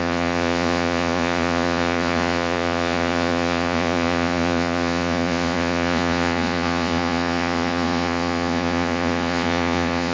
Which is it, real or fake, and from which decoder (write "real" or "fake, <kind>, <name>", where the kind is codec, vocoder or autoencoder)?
fake, vocoder, Vocos